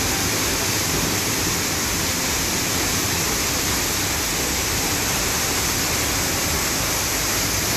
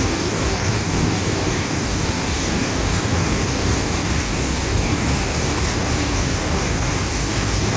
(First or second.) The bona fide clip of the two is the first